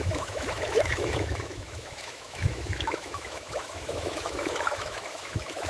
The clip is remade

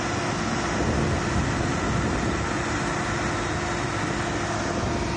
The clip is recorded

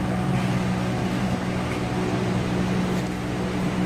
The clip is recorded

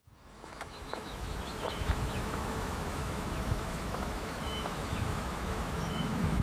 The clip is remade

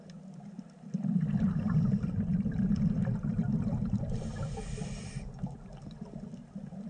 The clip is recorded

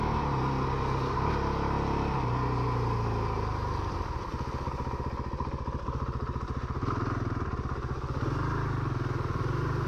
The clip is recorded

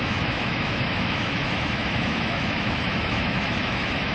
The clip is remade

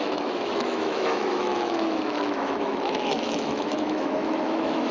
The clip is remade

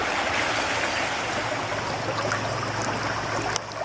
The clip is recorded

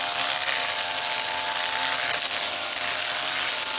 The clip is recorded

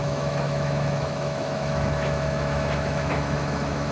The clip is remade